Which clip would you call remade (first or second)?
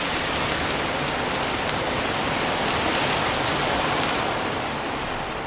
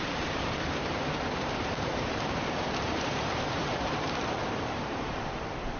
second